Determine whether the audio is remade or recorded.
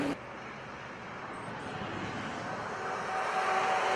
recorded